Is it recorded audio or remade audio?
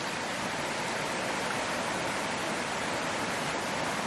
remade